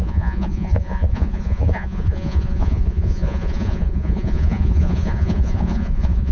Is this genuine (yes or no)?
no